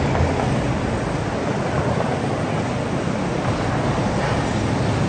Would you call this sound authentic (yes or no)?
yes